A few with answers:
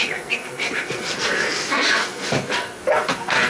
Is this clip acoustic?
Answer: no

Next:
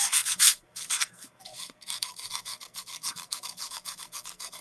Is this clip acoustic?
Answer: no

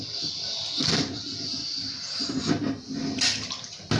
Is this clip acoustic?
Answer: yes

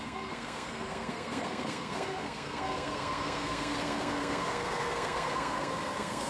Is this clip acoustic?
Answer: no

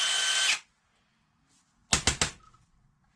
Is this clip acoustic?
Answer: yes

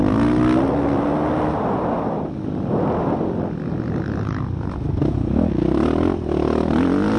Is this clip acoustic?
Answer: yes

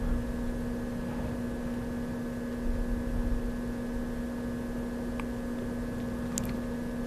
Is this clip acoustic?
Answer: yes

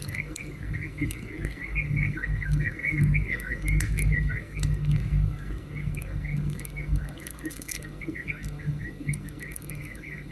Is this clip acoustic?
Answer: no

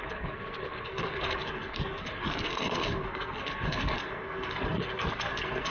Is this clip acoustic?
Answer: no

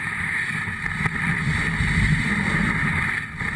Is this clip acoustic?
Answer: yes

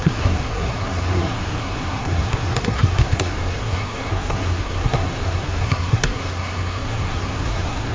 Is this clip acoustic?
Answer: no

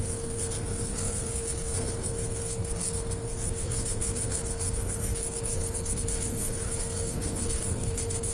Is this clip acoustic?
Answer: no